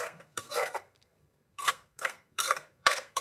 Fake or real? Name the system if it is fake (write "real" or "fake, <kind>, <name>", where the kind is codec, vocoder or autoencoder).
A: fake, codec, SNAC